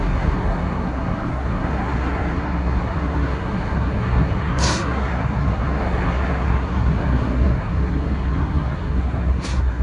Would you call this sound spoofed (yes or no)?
yes